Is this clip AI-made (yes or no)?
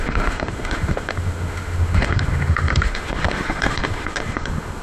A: yes